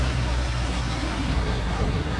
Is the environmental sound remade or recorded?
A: remade